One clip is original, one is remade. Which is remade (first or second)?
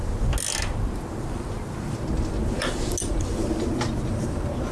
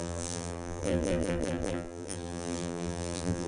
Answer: second